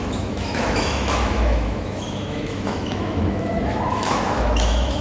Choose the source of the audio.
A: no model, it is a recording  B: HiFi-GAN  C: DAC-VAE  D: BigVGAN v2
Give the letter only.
C